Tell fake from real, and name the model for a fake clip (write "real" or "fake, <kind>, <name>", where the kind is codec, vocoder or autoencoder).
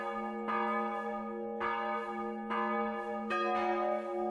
real